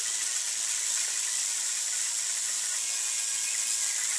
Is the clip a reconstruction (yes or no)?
no